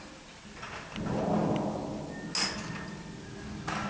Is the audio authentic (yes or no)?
yes